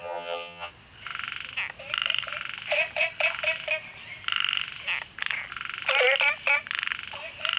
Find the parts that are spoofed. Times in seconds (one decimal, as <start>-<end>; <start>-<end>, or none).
0.0-0.7